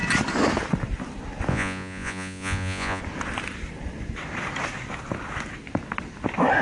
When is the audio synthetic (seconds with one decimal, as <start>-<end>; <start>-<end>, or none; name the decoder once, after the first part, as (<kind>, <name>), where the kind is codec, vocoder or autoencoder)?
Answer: 1.5-3.0 (vocoder, Vocos)

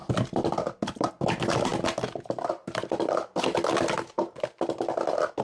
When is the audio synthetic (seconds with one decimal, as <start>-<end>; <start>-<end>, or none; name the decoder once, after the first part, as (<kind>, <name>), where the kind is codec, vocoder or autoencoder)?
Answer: none

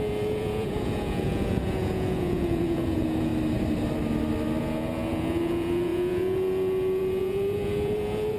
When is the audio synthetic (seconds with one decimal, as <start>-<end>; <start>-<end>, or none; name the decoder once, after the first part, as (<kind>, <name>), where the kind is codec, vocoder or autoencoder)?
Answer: 0.0-3.3 (vocoder, Vocos); 4.6-8.4

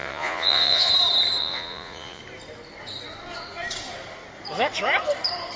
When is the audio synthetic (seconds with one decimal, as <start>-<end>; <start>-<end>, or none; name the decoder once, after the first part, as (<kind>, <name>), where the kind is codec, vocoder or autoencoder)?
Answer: 0.0-0.9 (vocoder, Vocos); 1.4-2.2

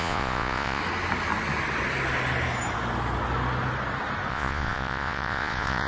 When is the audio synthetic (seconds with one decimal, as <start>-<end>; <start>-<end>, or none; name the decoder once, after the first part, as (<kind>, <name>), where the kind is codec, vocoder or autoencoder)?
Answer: 0.0-0.8 (vocoder, Vocos); 4.3-5.9